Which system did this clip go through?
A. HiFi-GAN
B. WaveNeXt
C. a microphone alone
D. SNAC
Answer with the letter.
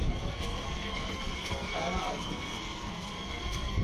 D